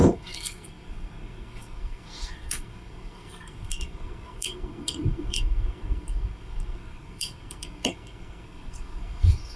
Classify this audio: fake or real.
fake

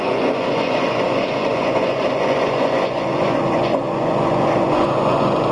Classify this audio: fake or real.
fake